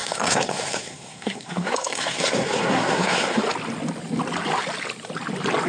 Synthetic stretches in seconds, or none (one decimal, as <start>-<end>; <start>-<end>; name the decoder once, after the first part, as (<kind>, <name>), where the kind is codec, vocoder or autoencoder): 0.0-3.4 (codec, SNAC)